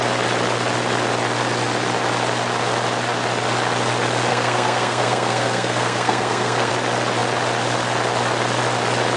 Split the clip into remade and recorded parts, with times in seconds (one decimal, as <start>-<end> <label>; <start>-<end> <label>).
0.0-4.3 recorded; 4.3-6.7 remade; 6.7-9.2 recorded